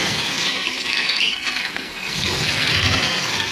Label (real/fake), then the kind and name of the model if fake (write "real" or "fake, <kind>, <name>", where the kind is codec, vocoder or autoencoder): fake, codec, SNAC